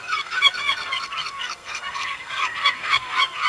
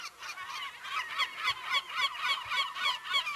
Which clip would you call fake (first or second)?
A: first